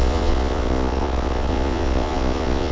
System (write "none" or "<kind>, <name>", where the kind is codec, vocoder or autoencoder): vocoder, Vocos